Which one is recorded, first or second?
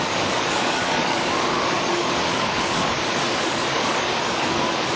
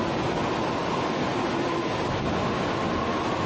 second